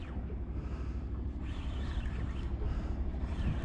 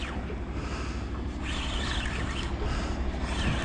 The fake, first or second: first